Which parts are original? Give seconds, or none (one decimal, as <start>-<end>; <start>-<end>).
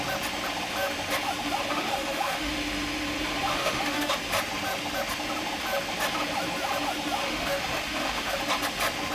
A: 0.0-1.7; 2.5-3.5; 4.1-7.2; 8.4-9.1